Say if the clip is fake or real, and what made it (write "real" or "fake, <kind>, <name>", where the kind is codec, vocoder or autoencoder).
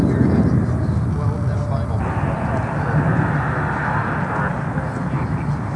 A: real